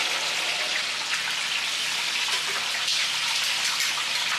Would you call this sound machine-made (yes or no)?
no